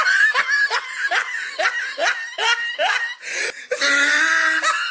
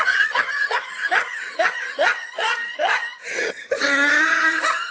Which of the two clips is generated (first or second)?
second